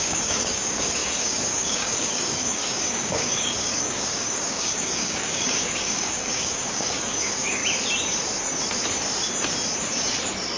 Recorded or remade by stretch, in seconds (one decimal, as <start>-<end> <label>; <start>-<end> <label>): 0.0-7.6 remade; 7.6-10.6 recorded